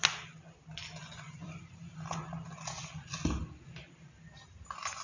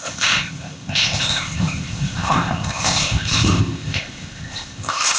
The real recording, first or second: first